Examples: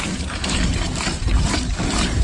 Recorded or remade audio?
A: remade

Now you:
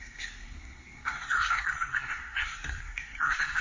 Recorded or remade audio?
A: remade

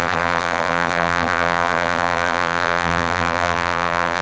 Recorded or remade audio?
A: remade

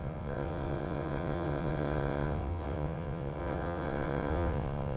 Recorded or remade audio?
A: remade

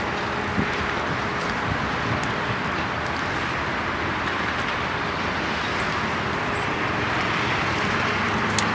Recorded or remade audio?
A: recorded